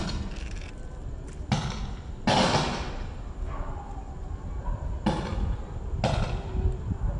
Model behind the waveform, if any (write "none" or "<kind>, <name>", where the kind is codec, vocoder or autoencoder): none